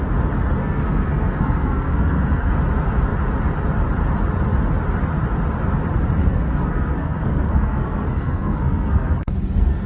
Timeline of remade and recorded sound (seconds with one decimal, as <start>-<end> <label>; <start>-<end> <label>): 0.0-0.6 recorded; 0.6-2.5 remade; 2.5-6.2 recorded; 6.2-9.9 remade